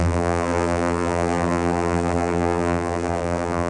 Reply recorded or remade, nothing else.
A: remade